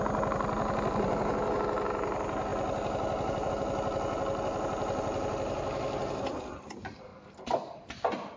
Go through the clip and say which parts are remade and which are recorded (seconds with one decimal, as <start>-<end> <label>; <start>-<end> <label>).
0.0-8.4 recorded